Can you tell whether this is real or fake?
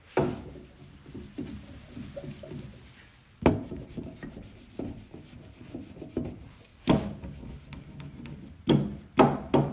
real